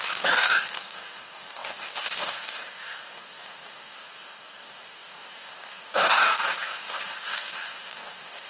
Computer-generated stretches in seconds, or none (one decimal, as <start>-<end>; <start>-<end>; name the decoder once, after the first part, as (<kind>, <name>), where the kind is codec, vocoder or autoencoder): 0.0-8.5 (codec, DAC)